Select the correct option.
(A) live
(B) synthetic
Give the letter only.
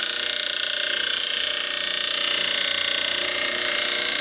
A